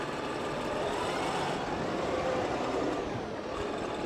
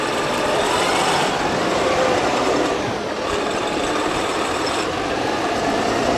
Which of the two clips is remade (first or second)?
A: second